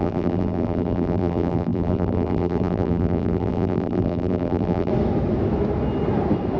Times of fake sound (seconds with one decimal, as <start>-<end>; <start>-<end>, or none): 0.0-4.9